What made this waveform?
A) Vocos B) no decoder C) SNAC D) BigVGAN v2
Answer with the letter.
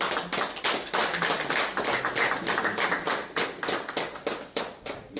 B